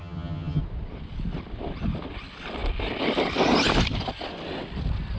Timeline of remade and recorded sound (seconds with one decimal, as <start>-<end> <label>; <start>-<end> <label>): 0.0-0.6 remade; 0.6-5.2 recorded